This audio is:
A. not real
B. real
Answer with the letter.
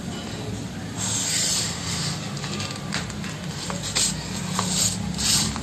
B